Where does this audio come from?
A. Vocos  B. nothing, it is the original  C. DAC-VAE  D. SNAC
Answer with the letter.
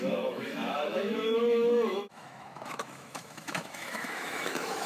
C